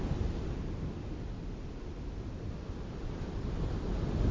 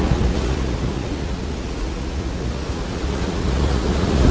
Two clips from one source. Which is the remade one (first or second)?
second